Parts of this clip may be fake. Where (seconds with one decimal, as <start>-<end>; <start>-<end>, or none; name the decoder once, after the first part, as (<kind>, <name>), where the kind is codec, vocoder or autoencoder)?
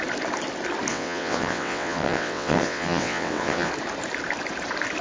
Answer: 0.9-3.7 (vocoder, WaveNeXt)